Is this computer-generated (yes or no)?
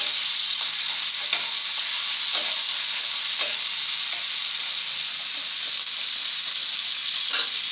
no